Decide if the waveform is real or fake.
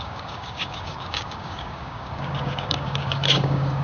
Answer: fake